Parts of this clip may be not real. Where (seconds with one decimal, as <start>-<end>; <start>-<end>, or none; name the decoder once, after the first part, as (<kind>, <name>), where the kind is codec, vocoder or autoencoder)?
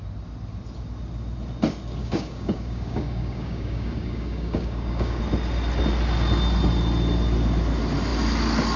2.0-5.2 (codec, DAC)